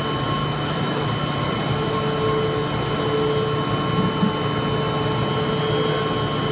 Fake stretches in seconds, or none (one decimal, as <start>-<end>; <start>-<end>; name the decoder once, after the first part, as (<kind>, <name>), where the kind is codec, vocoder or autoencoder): 0.4-1.0 (autoencoder, DAC-VAE)